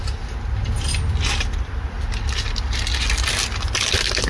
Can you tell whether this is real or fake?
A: real